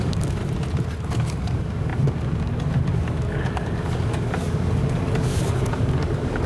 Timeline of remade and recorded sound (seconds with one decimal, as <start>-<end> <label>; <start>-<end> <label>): 0.0-0.4 remade; 0.4-1.1 recorded; 1.1-6.5 remade